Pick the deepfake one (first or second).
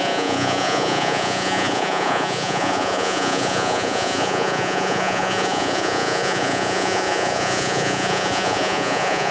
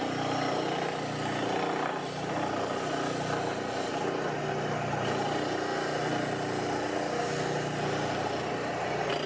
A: first